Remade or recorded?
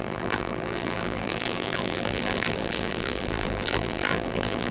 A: remade